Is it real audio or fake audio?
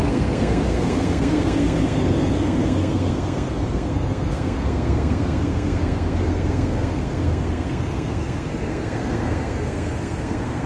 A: fake